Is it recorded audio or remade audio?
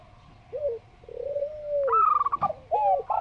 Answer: recorded